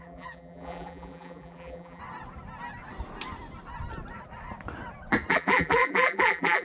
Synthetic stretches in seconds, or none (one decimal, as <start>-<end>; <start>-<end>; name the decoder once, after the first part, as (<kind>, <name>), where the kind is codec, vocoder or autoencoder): 0.0-2.0 (vocoder, BigVGAN v2); 5.3-6.6